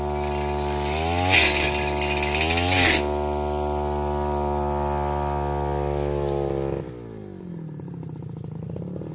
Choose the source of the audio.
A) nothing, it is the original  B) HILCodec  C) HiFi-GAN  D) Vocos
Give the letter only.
A